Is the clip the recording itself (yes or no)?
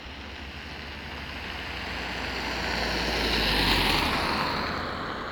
yes